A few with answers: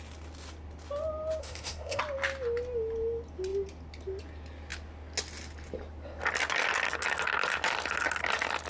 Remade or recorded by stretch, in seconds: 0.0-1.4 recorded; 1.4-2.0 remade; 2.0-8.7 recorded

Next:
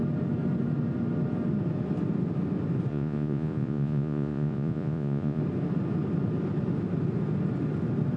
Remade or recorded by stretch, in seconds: 0.0-2.9 recorded; 2.9-5.4 remade; 5.4-8.2 recorded

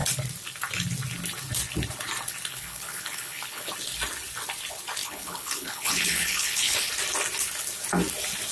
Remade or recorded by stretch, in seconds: 0.0-2.5 recorded; 2.5-3.7 remade; 3.7-5.0 recorded; 5.0-6.9 remade; 6.9-8.5 recorded

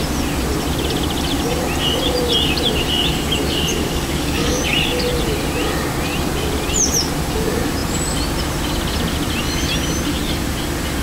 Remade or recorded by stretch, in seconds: 0.0-3.7 recorded; 3.7-4.6 remade; 4.6-11.0 recorded

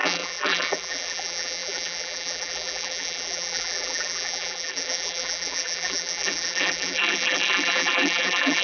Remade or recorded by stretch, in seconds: 0.0-8.6 remade